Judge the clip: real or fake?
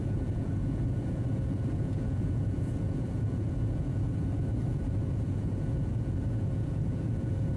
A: fake